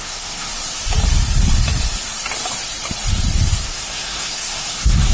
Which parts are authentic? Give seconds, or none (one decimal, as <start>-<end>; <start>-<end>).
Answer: 0.5-3.6